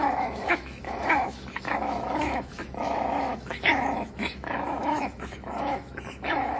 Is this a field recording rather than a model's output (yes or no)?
no